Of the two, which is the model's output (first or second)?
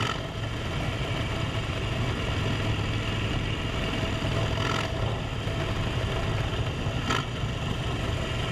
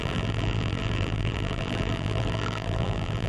second